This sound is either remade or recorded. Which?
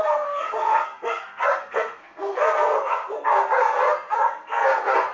remade